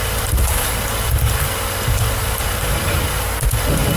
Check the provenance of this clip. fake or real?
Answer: real